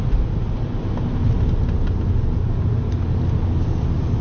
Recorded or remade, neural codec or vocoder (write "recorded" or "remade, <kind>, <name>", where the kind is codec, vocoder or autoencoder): recorded